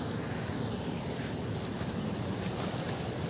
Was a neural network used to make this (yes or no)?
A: no